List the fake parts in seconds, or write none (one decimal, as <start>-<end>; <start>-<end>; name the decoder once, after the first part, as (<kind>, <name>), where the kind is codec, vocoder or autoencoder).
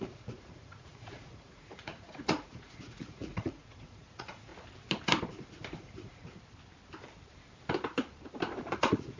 0.0-4.5 (vocoder, Vocos); 5.8-6.2; 8.6-9.2